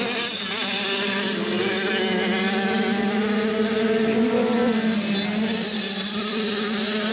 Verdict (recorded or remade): recorded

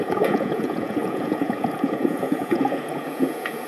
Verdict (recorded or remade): remade